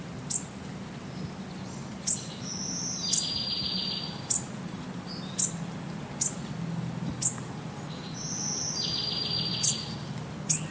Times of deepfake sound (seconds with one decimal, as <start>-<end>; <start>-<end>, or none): none